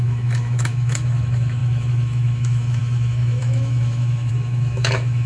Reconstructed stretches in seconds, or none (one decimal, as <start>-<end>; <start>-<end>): 0.0-5.3